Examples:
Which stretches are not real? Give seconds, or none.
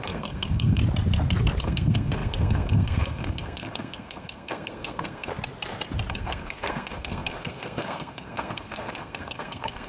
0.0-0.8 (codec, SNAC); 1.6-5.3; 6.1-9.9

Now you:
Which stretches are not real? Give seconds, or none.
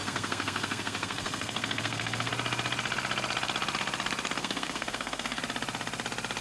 0.0-2.3 (codec, SNAC); 4.4-5.4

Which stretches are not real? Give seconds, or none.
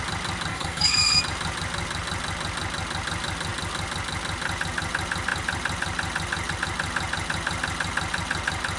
0.5-1.2 (codec, SNAC)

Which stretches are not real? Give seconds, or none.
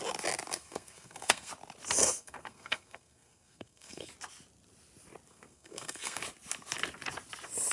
0.5-1.5 (codec, SNAC); 2.0-4.1; 5.3-6.2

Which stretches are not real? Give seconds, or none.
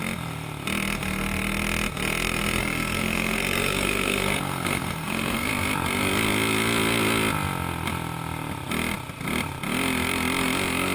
2.6-5.5 (codec, SNAC)